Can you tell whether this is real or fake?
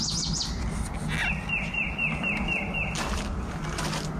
real